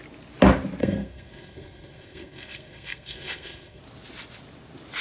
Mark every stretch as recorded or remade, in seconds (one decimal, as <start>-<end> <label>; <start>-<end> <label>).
0.0-0.8 recorded; 0.8-3.8 remade; 3.8-5.0 recorded